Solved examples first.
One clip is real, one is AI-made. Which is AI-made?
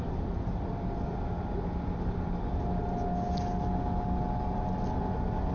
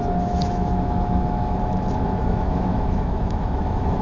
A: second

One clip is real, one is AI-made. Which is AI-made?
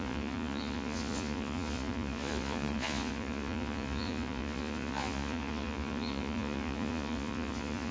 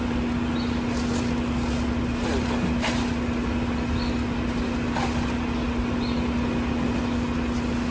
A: first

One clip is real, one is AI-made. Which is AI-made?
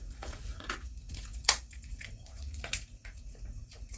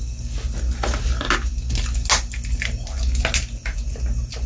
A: first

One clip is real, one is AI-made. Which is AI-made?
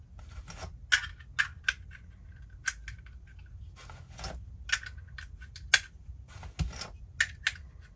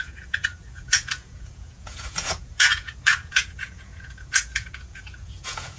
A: second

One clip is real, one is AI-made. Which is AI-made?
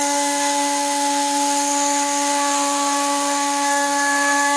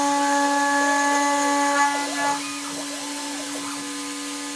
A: first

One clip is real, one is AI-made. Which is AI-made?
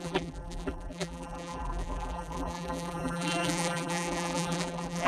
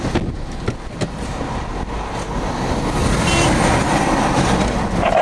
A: first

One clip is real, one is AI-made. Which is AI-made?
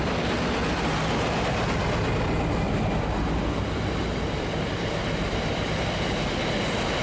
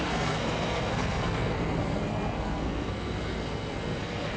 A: second